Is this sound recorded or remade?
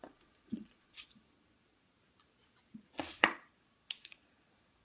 remade